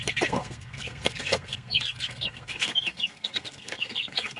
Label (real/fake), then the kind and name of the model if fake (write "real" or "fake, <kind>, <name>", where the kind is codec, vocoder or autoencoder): fake, codec, SNAC